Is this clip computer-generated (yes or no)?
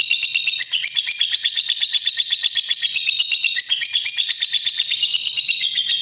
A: yes